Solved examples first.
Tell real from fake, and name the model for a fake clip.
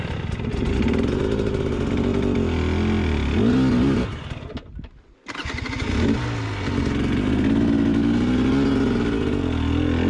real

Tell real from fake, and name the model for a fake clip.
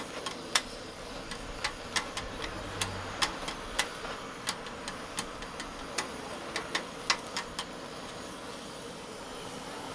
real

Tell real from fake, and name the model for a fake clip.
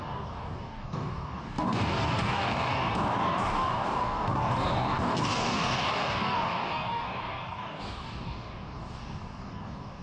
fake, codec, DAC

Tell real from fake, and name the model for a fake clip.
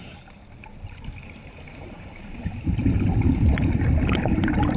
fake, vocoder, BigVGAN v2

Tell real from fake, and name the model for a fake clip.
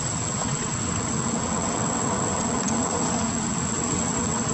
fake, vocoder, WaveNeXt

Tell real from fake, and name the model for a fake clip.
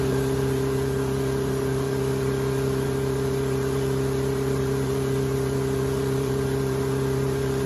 fake, vocoder, BigVGAN v2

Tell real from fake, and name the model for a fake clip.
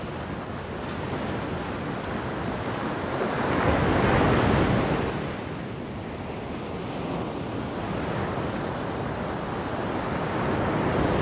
real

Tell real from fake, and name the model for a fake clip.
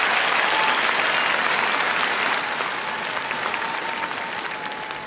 real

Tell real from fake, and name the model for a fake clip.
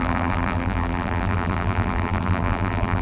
fake, vocoder, BigVGAN v2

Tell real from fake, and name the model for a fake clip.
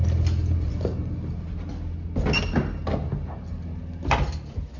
real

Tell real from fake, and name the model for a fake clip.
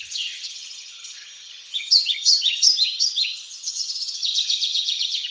fake, vocoder, HiFi-GAN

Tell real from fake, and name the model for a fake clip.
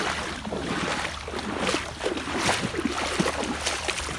real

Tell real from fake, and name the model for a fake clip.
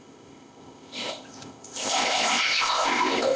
fake, codec, ZipCodec